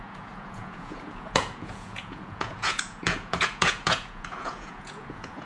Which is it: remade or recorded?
remade